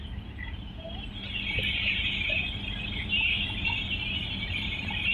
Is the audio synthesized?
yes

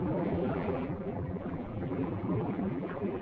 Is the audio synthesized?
yes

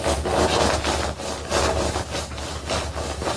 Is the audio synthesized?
no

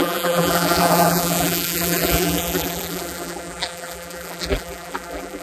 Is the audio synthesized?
yes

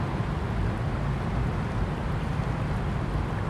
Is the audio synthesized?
no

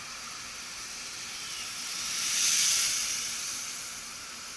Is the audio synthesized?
yes